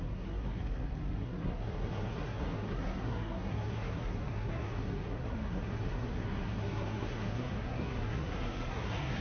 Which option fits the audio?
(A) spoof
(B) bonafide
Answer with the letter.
A